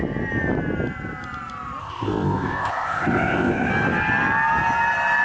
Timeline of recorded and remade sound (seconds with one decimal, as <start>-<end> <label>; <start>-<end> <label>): 0.0-1.8 recorded; 1.8-3.7 remade; 3.7-5.2 recorded